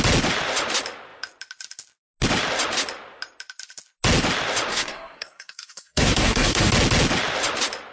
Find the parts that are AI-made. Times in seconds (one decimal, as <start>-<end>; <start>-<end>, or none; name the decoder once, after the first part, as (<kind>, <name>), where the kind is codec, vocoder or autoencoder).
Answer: 4.7-6.7 (codec, SNAC)